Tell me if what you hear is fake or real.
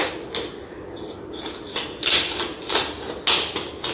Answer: real